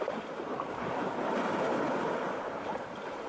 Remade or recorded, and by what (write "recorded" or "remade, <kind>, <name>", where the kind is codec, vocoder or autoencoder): remade, vocoder, BigVGAN v2